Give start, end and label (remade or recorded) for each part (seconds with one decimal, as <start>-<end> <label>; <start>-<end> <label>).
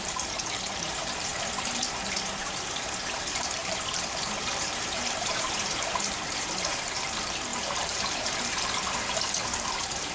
0.0-10.1 remade